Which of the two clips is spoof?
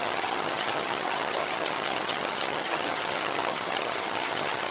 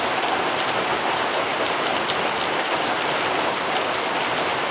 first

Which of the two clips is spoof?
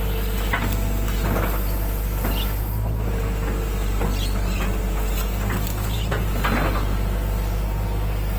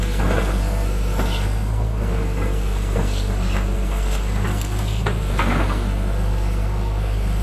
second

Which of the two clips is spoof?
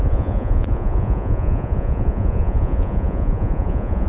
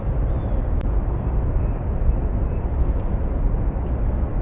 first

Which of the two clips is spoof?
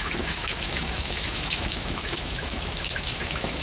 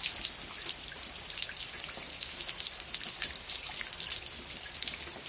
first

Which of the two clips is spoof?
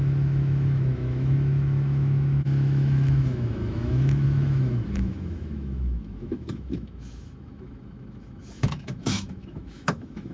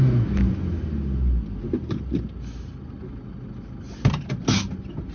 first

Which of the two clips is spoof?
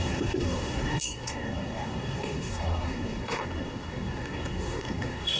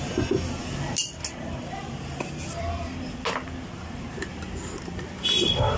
first